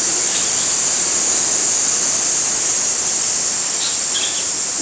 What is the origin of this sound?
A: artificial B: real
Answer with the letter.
B